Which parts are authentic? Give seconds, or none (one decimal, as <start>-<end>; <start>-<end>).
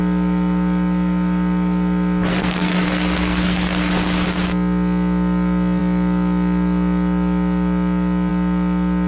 0.0-2.3; 3.9-9.1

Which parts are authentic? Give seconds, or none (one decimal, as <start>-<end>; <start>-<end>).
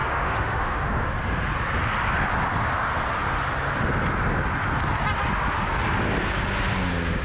1.1-7.2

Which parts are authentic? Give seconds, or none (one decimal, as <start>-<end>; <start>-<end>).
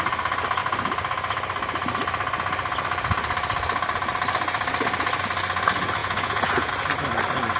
0.0-6.0; 6.7-7.6